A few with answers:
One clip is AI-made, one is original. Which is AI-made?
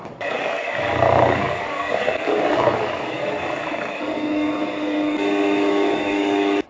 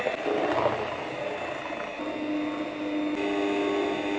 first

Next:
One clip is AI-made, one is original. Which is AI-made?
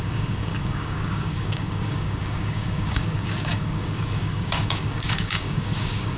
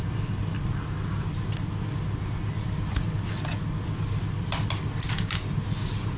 first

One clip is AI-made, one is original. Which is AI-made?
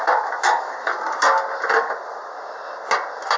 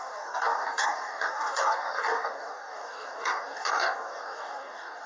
second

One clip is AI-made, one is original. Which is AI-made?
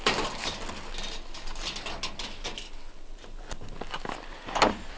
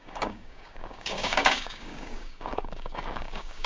second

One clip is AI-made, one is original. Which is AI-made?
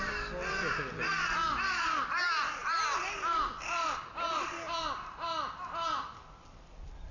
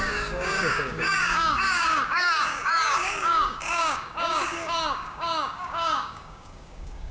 second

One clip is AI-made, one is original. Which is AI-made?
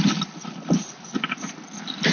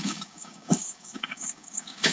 second